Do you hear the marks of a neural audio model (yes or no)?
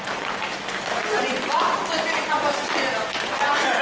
no